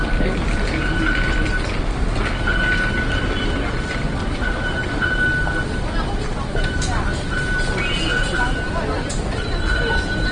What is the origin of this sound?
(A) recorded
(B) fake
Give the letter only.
A